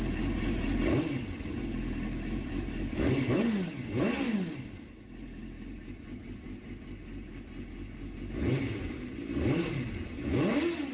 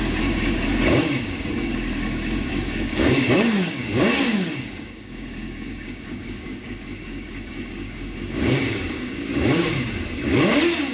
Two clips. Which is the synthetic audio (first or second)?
second